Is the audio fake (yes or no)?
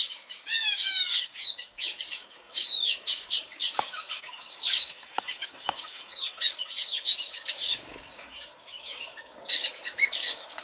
yes